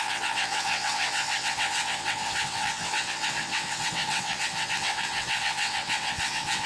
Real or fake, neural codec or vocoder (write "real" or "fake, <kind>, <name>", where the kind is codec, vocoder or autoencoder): fake, vocoder, WaveNeXt